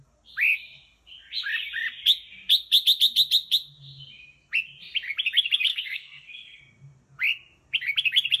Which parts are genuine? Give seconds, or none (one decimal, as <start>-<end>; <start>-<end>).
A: 0.0-5.7; 6.6-8.4